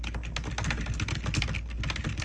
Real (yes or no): yes